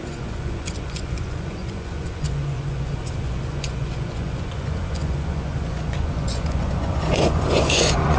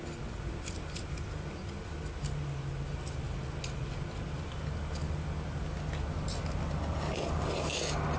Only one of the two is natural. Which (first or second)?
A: second